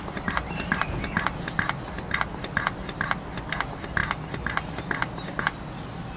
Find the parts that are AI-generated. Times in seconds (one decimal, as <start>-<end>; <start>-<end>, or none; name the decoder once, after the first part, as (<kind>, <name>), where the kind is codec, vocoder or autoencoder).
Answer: none